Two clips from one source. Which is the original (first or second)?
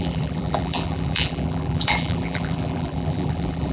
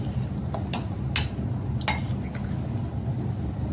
second